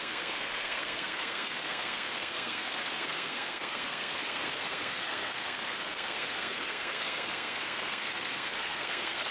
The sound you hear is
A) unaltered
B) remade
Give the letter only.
B